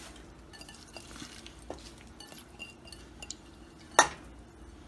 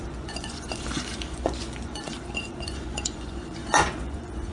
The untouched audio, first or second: first